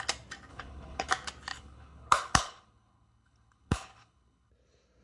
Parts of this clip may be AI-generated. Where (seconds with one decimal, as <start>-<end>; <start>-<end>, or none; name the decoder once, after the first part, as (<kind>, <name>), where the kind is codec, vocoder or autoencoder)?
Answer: 0.5-1.1 (codec, HILCodec); 1.5-4.5